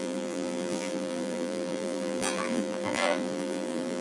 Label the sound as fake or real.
fake